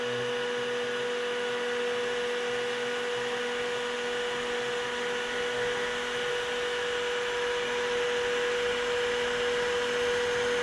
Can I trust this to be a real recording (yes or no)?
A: yes